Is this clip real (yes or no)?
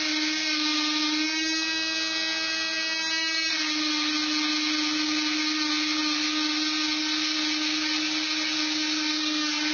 yes